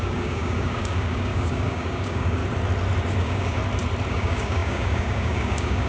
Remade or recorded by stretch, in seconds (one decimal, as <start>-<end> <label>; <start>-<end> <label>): 0.0-2.4 remade; 2.4-3.2 recorded; 3.2-3.6 remade; 3.6-4.1 recorded; 4.1-5.9 remade